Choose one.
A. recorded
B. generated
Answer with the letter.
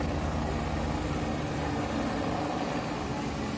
A